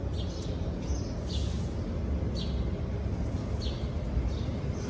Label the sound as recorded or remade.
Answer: recorded